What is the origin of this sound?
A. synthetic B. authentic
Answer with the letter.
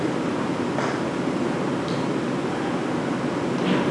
B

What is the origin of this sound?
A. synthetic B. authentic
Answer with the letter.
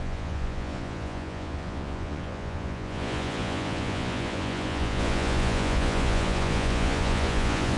A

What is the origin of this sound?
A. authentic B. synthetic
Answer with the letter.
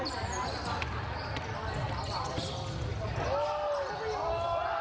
A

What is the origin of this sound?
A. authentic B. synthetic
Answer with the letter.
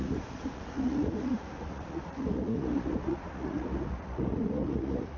B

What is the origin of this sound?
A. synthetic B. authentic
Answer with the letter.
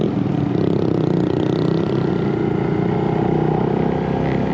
B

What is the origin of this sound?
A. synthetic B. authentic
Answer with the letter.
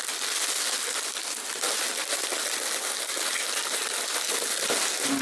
B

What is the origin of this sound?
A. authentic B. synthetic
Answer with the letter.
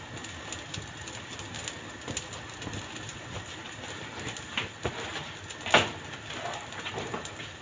A